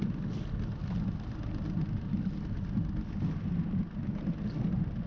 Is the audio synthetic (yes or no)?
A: no